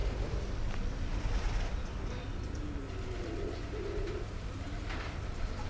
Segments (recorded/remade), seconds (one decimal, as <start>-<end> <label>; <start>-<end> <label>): 0.0-5.7 recorded

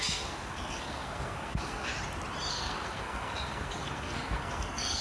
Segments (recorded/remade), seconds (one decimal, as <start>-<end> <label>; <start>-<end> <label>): 0.0-1.9 remade; 1.9-2.5 recorded; 2.5-5.0 remade

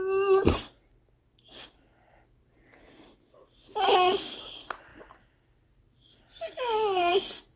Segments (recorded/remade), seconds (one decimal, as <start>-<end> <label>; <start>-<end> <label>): 0.0-7.6 recorded

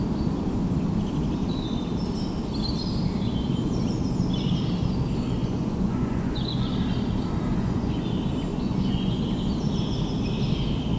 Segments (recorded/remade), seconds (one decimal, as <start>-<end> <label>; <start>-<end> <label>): 0.0-5.4 recorded; 5.4-6.7 remade; 6.7-7.5 recorded; 7.5-8.1 remade; 8.1-8.5 recorded; 8.5-9.2 remade; 9.2-11.0 recorded

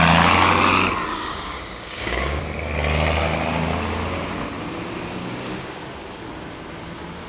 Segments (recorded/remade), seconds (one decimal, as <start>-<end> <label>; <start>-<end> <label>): 0.0-1.1 recorded; 1.1-2.4 remade; 2.4-5.2 recorded; 5.2-5.8 remade; 5.8-7.3 recorded

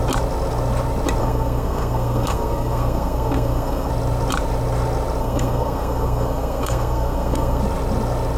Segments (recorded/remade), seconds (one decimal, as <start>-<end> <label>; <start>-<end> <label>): 0.0-1.2 recorded; 1.2-3.9 remade; 3.9-5.2 recorded; 5.2-7.6 remade; 7.6-8.4 recorded